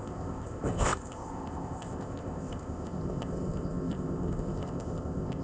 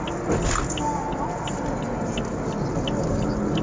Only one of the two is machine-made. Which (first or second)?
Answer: first